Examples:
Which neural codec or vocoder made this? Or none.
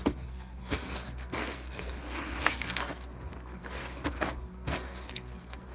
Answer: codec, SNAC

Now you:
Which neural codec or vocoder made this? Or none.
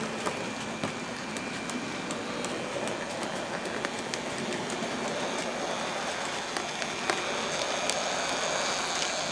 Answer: none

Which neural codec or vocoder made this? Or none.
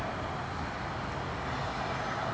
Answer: none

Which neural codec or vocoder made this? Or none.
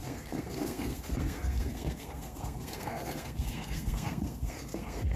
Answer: codec, SNAC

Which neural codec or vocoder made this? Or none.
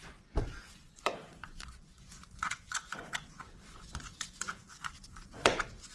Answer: vocoder, Vocos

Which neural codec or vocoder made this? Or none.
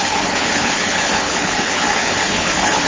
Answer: codec, HILCodec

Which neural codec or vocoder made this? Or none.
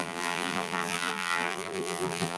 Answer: vocoder, BigVGAN v2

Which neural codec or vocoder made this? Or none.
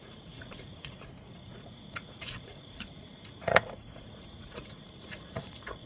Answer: vocoder, Vocos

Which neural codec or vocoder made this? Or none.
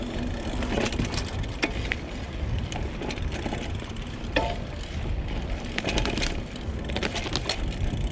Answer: none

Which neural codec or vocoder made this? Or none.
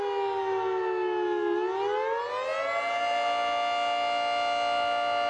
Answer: none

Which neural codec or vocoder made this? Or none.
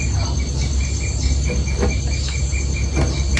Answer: none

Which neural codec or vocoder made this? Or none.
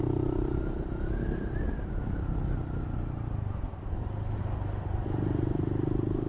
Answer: none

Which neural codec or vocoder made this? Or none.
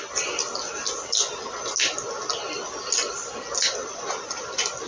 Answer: none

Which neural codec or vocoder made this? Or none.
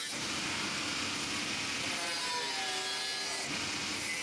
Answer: none